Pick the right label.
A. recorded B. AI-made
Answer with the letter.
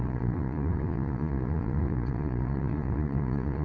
B